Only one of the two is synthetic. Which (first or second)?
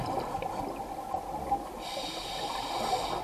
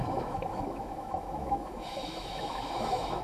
second